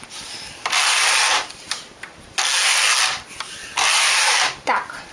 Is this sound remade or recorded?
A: recorded